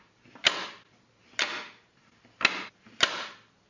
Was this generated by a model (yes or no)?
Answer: no